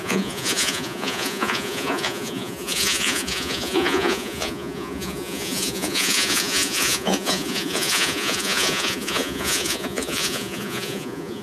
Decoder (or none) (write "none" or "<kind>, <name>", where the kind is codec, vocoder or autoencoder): vocoder, Vocos